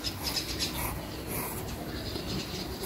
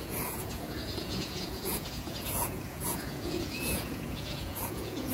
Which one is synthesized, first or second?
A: second